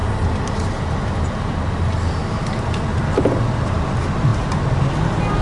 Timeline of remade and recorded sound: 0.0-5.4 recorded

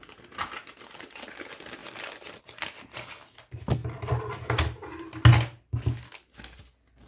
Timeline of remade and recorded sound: 0.0-7.1 recorded

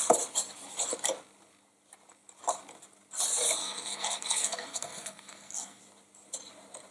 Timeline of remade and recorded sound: 0.0-3.6 recorded; 3.6-5.8 remade; 5.8-6.9 recorded

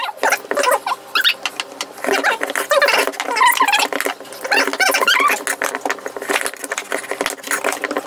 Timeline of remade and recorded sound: 0.0-8.1 recorded

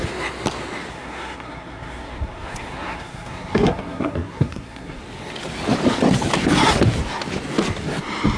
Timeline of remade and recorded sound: 0.0-0.9 recorded; 0.9-5.0 remade; 5.0-8.4 recorded

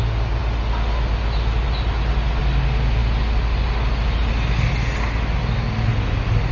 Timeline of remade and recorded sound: 0.0-6.5 recorded